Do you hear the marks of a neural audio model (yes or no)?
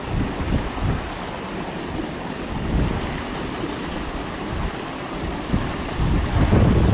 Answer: no